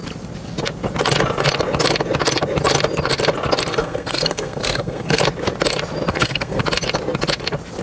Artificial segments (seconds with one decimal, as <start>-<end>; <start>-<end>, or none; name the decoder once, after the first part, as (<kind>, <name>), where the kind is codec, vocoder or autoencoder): 3.7-5.2 (codec, SNAC); 6.1-6.6